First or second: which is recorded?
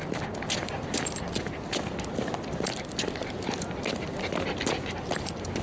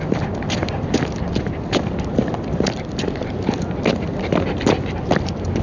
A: first